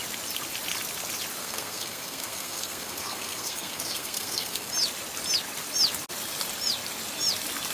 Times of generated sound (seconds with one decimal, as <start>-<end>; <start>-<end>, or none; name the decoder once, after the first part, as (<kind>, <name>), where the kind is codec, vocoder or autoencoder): 1.4-4.7 (codec, SNAC)